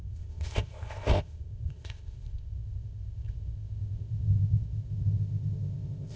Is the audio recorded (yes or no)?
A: no